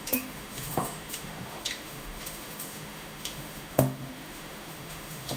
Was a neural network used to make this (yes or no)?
yes